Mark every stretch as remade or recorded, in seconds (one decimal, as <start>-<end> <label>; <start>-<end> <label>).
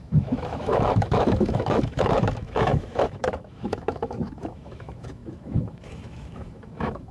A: 0.0-7.1 remade